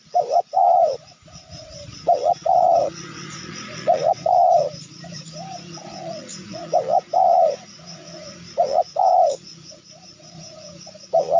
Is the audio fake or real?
fake